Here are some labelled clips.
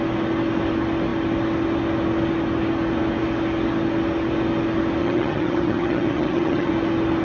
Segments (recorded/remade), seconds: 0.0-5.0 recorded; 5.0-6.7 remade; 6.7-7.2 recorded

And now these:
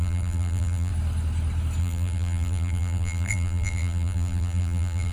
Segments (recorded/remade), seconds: 0.0-0.9 remade; 0.9-1.8 recorded; 1.8-5.1 remade

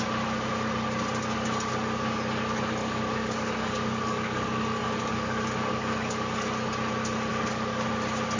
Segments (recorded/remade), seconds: 0.0-2.8 recorded; 2.8-6.5 remade; 6.5-7.3 recorded; 7.3-7.9 remade; 7.9-8.4 recorded

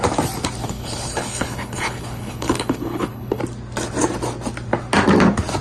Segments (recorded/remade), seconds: 0.0-0.6 recorded; 0.6-3.4 remade; 3.4-5.6 recorded

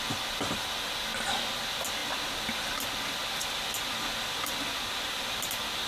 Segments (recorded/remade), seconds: 0.0-5.9 recorded

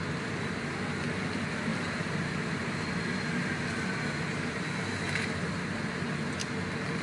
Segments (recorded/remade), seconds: 0.0-7.0 recorded